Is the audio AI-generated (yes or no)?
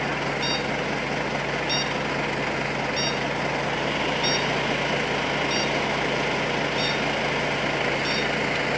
no